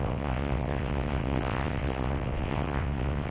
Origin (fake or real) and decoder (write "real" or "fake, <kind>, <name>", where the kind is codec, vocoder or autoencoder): fake, vocoder, WaveNeXt